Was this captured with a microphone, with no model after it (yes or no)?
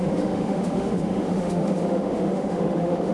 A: no